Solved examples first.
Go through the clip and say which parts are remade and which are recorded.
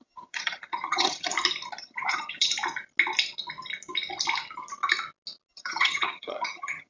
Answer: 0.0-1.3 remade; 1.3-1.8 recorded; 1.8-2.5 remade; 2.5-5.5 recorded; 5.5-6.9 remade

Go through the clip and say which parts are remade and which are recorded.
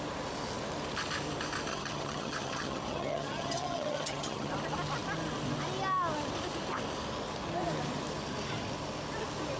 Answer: 0.0-1.7 recorded; 1.7-4.5 remade; 4.5-9.6 recorded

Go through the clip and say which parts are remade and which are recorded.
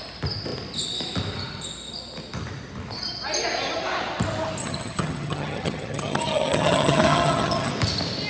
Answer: 0.0-4.6 recorded; 4.6-7.7 remade; 7.7-8.3 recorded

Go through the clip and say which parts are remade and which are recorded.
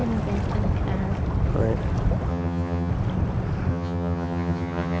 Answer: 0.0-2.3 recorded; 2.3-2.9 remade; 2.9-3.7 recorded; 3.7-5.0 remade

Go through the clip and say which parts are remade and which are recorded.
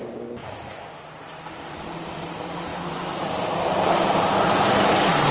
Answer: 0.0-5.3 recorded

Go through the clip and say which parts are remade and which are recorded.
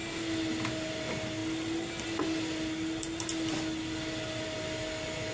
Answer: 0.0-5.3 recorded